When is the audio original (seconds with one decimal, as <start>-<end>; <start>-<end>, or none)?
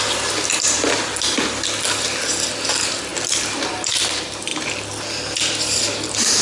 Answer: 0.0-6.4